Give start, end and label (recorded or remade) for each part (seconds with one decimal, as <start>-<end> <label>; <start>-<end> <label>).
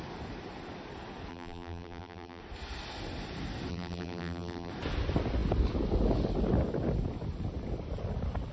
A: 0.0-1.3 recorded; 1.3-2.4 remade; 2.4-3.7 recorded; 3.7-4.7 remade; 4.7-8.5 recorded